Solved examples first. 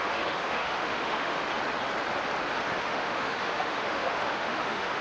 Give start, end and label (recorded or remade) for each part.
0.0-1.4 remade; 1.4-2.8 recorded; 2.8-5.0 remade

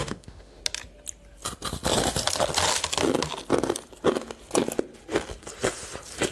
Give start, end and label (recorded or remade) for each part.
0.0-0.6 remade; 0.6-6.3 recorded

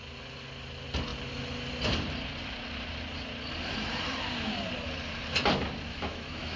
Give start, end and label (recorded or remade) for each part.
0.0-5.9 recorded; 5.9-6.6 remade

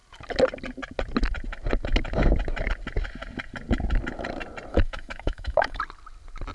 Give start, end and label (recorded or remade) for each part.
0.0-4.7 recorded; 4.7-5.8 remade; 5.8-6.5 recorded

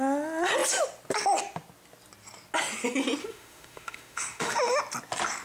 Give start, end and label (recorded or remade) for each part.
0.0-3.2 recorded; 3.2-4.8 remade; 4.8-5.4 recorded

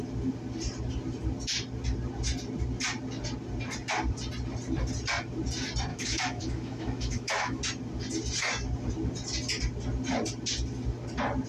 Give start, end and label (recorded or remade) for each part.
0.0-5.9 recorded; 5.9-7.6 remade; 7.6-11.5 recorded